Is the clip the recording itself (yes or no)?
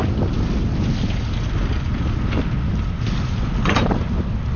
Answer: yes